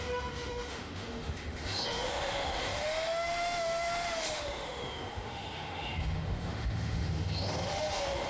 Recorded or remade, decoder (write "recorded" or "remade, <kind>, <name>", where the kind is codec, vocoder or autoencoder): remade, autoencoder, DAC-VAE